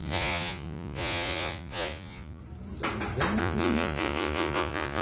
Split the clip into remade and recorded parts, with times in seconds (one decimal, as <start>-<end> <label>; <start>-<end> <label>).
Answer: 0.0-2.4 remade; 2.4-3.4 recorded; 3.4-5.0 remade